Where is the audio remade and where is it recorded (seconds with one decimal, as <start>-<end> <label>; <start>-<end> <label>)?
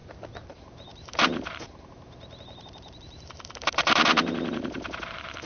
0.0-0.5 recorded; 0.5-5.5 remade